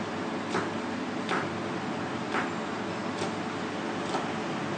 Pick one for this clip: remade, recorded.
recorded